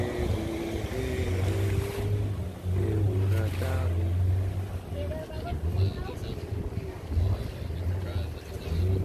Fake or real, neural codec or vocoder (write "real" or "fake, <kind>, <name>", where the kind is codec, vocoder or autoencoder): real